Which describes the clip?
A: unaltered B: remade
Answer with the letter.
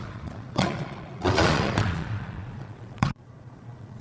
B